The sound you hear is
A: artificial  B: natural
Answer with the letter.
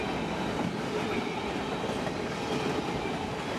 B